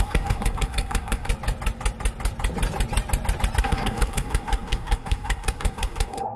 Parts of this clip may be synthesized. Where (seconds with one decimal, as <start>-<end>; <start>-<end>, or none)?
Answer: 0.0-1.3; 3.6-6.4